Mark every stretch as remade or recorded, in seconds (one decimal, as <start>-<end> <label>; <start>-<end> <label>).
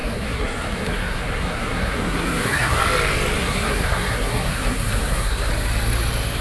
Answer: 0.0-2.8 remade; 2.8-3.4 recorded; 3.4-5.5 remade; 5.5-6.4 recorded